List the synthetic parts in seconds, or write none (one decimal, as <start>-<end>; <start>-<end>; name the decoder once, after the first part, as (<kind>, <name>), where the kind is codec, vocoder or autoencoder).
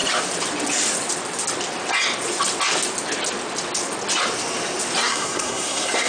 5.0-6.1 (codec, SNAC)